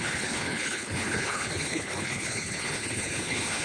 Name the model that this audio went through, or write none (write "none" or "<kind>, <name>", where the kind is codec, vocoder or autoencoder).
codec, HILCodec